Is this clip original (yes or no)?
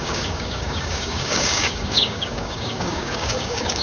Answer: no